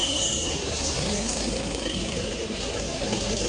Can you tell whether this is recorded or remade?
remade